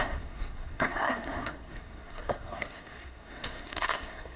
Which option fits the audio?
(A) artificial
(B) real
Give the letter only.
A